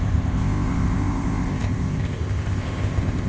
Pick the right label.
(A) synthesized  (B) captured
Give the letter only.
A